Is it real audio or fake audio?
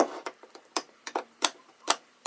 fake